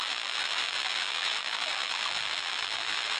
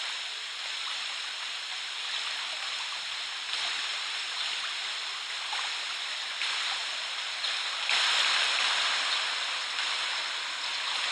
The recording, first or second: second